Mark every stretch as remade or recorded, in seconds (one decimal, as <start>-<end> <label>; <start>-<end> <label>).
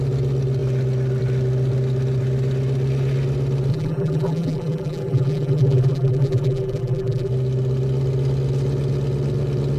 0.0-3.7 recorded; 3.7-7.3 remade; 7.3-9.8 recorded